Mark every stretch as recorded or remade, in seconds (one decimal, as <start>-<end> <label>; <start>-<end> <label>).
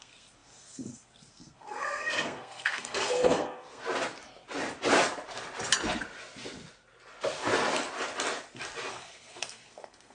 0.0-3.8 remade; 3.8-8.9 recorded; 8.9-10.1 remade